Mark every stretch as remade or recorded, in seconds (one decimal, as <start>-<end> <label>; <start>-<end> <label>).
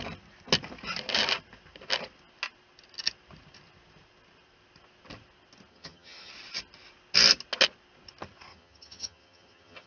0.0-5.7 recorded; 5.7-6.3 remade; 6.3-8.5 recorded; 8.5-9.9 remade